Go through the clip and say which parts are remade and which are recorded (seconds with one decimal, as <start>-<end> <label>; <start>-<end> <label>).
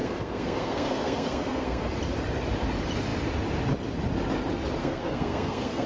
0.0-1.9 remade; 1.9-4.8 recorded; 4.8-5.9 remade